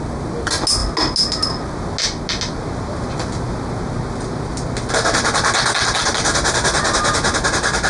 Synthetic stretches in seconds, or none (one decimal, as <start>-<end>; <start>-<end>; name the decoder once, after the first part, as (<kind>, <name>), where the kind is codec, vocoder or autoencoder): none